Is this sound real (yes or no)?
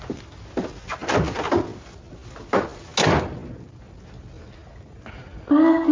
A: yes